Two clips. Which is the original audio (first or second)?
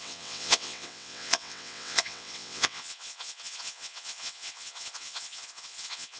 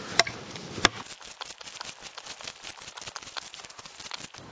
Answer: second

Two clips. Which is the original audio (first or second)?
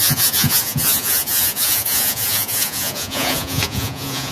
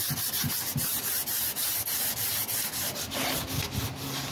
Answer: second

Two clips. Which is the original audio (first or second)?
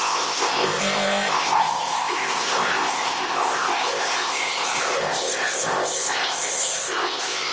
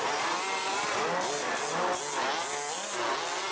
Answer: second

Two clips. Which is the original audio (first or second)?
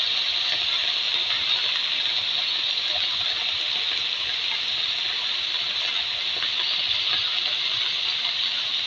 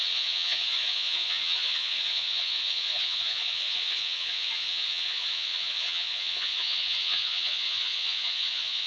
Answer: first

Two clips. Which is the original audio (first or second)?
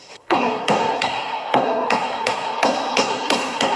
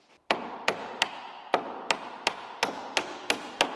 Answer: second